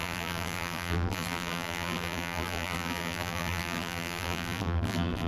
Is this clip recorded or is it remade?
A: remade